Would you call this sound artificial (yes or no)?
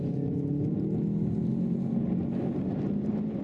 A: no